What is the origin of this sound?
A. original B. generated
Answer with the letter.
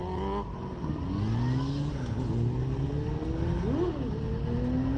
A